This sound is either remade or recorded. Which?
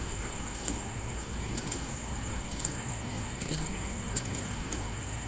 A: remade